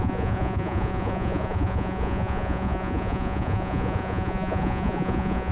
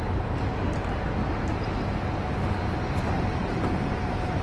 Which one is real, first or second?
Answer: second